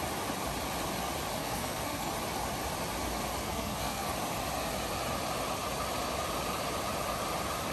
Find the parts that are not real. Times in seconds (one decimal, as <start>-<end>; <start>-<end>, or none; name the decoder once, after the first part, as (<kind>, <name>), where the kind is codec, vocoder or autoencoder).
1.4-2.1 (codec, SNAC); 3.4-4.1